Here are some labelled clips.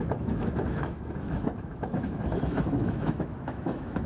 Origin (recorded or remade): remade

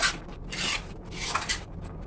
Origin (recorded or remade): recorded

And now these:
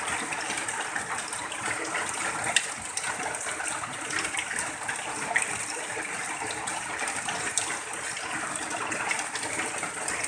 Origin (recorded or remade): recorded